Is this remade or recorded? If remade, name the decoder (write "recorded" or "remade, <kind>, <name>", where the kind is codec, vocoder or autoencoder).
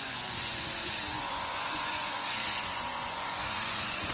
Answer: remade, vocoder, Vocos